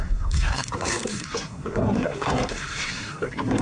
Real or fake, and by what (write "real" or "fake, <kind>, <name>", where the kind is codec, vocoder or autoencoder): fake, codec, SNAC